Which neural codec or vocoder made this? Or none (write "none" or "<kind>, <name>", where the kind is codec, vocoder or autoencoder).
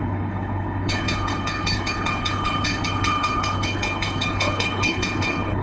codec, HILCodec